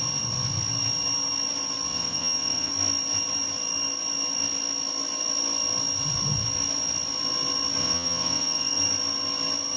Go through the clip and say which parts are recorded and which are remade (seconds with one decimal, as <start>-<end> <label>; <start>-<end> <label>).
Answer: 0.0-1.9 recorded; 1.9-2.7 remade; 2.7-7.8 recorded; 7.8-8.8 remade; 8.8-9.8 recorded